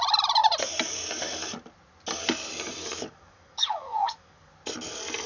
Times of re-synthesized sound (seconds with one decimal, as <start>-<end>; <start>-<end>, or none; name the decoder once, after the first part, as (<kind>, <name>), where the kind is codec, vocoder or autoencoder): 2.8-4.5 (codec, DAC)